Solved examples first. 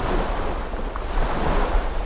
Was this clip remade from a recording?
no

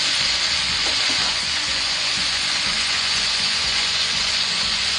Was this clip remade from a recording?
yes